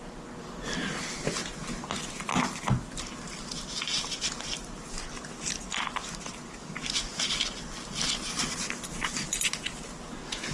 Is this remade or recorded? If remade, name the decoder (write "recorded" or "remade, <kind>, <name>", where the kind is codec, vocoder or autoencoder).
recorded